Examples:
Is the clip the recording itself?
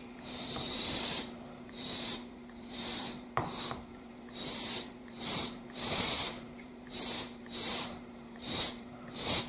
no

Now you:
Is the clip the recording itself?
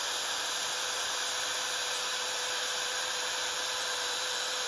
no